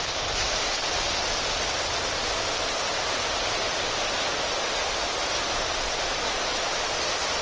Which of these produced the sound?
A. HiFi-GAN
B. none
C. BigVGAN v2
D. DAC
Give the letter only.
B